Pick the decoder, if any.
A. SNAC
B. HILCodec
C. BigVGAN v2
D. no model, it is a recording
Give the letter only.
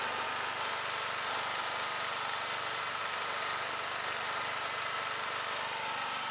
D